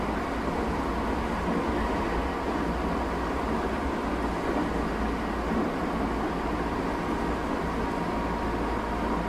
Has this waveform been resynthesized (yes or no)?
no